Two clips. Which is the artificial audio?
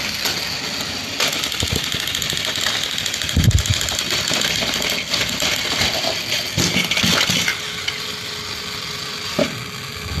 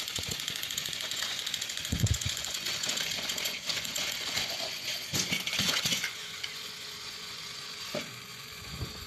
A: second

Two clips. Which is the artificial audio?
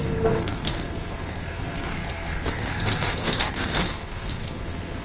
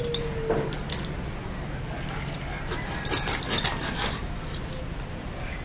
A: first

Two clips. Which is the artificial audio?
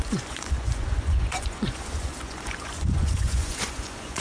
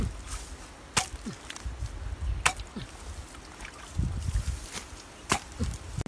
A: first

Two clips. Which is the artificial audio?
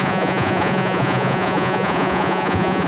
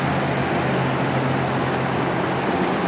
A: first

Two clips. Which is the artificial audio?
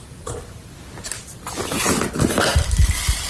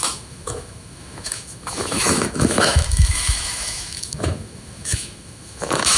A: second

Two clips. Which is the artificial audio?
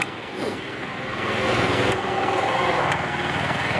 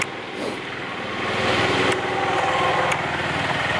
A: first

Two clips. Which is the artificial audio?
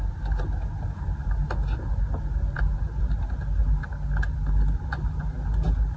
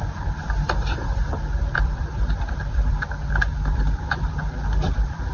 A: second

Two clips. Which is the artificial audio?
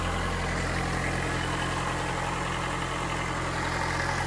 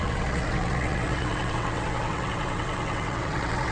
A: second